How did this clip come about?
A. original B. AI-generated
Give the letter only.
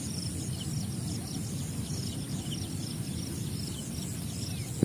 A